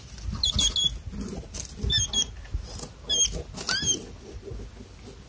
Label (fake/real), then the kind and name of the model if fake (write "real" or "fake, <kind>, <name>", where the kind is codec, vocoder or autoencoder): real